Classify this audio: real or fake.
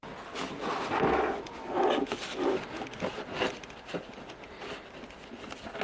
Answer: real